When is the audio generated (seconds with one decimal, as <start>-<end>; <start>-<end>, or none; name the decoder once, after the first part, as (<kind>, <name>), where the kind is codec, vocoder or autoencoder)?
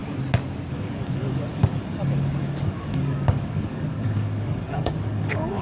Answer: 0.7-5.6 (codec, DAC)